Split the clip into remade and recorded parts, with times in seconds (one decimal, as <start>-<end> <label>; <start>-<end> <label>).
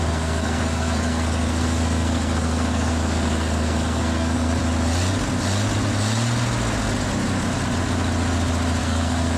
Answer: 0.0-4.6 remade; 4.6-8.8 recorded; 8.8-9.4 remade